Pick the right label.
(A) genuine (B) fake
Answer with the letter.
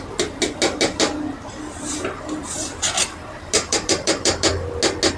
A